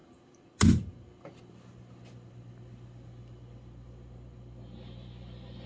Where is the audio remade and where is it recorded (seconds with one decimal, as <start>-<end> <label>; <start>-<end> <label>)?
0.0-5.7 recorded